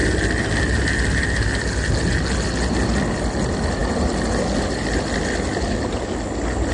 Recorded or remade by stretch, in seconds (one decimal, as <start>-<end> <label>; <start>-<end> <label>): 0.0-6.7 recorded